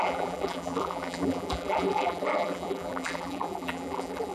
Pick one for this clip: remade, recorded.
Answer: remade